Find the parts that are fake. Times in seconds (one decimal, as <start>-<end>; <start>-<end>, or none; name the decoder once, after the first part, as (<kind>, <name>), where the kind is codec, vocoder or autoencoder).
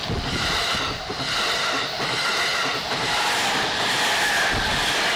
2.5-5.2 (vocoder, BigVGAN v2)